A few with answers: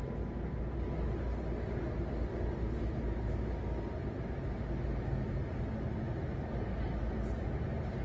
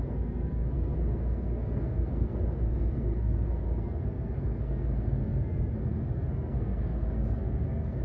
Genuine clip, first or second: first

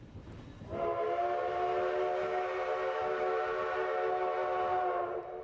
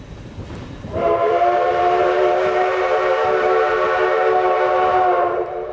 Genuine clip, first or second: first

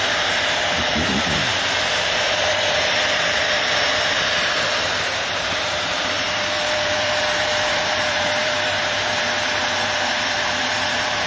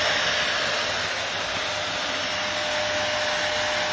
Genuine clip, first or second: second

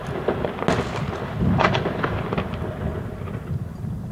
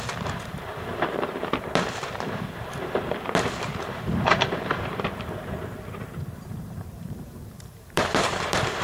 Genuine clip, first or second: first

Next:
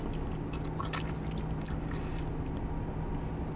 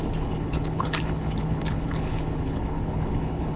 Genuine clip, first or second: first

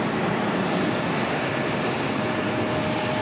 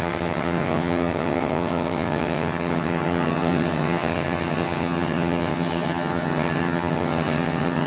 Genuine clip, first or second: first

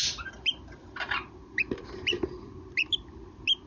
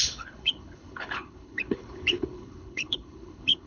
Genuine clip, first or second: first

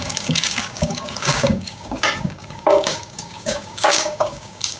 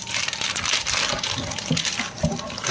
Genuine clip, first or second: second